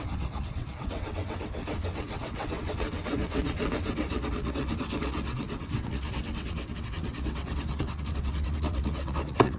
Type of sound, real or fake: fake